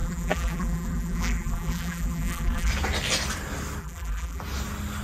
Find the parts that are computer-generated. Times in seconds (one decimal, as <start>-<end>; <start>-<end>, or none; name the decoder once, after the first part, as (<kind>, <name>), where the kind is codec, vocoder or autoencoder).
0.0-2.7 (vocoder, BigVGAN v2); 3.8-4.4